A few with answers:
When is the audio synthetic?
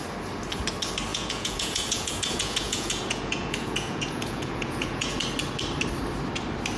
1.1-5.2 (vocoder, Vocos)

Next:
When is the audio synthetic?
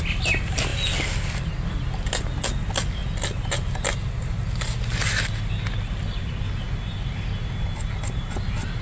none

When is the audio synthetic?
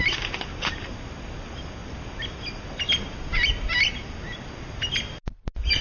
none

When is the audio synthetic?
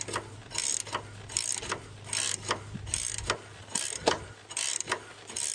none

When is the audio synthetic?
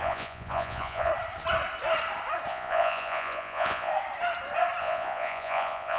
0.0-1.1 (vocoder, Vocos); 2.5-3.9; 4.8-6.0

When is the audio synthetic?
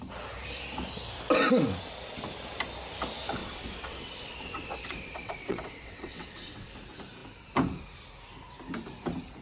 3.4-6.7 (vocoder, WaveNeXt)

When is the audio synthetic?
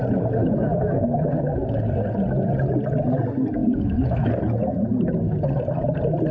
0.4-1.3 (autoencoder, DAC-VAE); 3.6-4.3